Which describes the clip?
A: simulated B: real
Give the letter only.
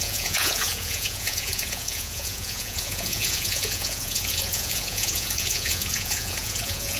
A